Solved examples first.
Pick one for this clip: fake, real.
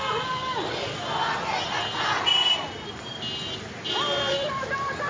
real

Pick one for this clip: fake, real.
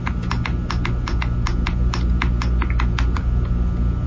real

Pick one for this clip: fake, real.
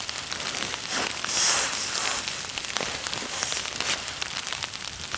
real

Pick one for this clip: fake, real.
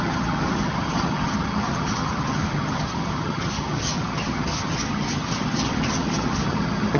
fake